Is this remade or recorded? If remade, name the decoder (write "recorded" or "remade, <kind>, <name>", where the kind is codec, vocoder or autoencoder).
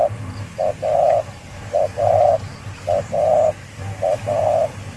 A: recorded